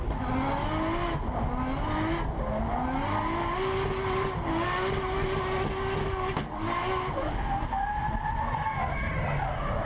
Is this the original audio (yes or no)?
yes